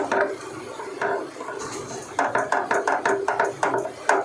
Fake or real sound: real